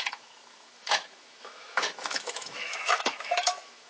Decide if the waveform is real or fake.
fake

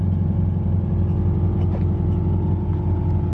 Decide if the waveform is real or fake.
real